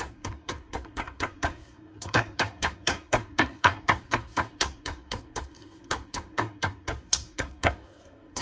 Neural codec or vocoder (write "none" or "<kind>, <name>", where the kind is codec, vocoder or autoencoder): codec, SNAC